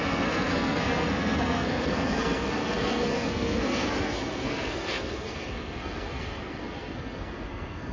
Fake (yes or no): yes